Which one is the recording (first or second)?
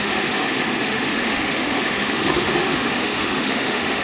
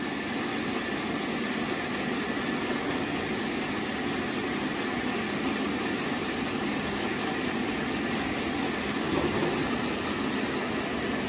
second